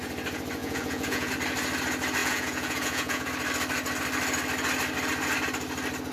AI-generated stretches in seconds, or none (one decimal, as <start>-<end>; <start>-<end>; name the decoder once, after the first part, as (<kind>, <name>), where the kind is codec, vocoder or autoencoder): 0.6-1.3 (vocoder, Vocos); 2.2-3.3